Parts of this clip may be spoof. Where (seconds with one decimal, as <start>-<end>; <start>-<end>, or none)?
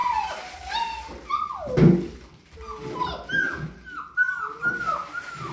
none